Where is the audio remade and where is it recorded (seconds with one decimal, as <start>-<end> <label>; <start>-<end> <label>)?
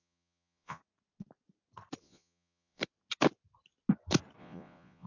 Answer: 0.0-0.8 remade; 0.8-2.0 recorded; 2.0-2.8 remade; 2.8-4.4 recorded; 4.4-5.1 remade